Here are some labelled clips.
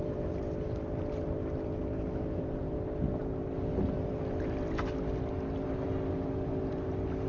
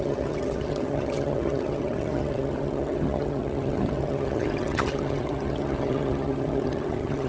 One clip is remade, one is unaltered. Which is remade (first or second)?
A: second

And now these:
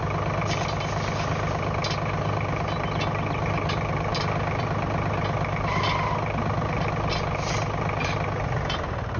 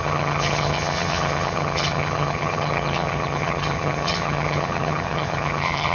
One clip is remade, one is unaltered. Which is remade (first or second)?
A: second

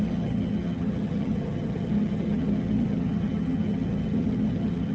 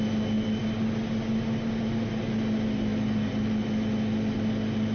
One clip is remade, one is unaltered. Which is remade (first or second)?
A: first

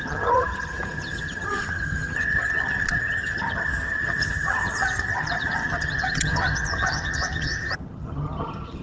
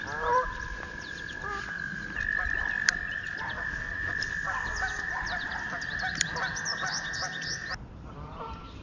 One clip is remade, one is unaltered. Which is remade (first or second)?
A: first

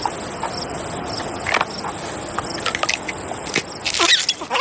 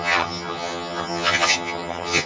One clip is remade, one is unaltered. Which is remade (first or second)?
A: second